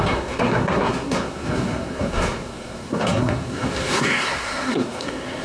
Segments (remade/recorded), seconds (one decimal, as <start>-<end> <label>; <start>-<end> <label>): 0.0-5.4 remade